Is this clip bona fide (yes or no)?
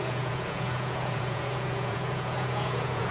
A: no